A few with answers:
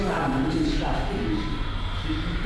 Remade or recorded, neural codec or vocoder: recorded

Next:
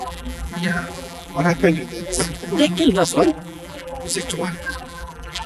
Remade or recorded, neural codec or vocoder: remade, vocoder, BigVGAN v2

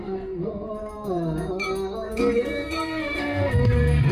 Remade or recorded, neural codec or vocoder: remade, codec, SNAC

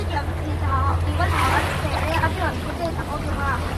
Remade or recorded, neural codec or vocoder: recorded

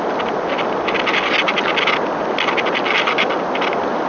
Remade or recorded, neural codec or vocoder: recorded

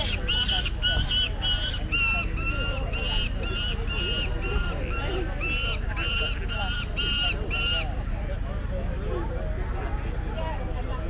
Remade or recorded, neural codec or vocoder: recorded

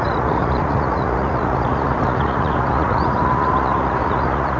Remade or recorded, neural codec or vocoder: remade, vocoder, Vocos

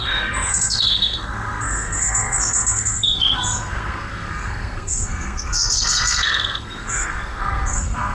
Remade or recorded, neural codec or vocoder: remade, codec, SNAC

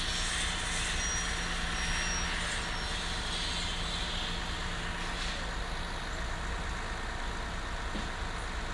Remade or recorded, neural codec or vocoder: recorded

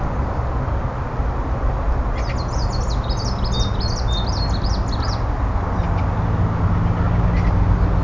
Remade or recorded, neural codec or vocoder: recorded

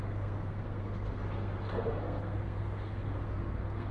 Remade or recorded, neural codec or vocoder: remade, codec, SNAC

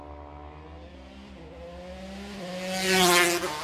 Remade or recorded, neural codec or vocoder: recorded